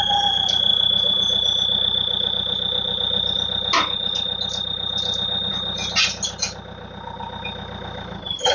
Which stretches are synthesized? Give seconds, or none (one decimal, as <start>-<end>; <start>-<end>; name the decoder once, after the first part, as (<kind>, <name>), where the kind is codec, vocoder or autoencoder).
none